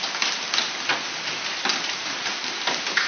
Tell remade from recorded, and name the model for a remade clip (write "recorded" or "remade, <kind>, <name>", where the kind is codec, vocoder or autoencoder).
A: recorded